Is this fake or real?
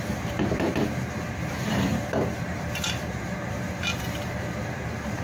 fake